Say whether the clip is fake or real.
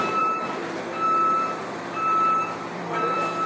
fake